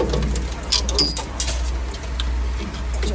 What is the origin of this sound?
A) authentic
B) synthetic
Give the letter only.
A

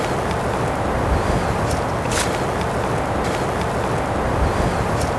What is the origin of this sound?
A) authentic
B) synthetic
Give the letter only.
A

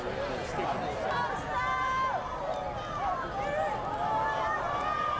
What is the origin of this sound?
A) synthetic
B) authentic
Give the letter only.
B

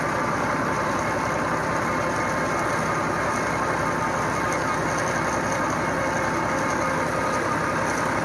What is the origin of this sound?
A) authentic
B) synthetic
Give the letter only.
A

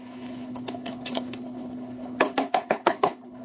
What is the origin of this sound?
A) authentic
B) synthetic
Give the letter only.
B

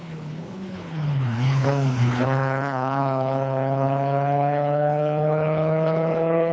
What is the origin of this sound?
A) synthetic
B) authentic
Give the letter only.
A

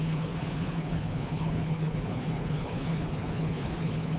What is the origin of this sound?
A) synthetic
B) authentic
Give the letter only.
A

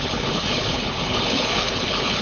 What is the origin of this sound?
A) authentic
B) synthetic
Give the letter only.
B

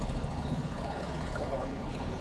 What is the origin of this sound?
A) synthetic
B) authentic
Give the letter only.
A